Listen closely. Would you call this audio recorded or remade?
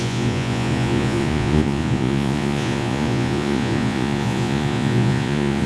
remade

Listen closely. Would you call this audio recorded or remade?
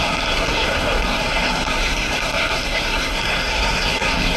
remade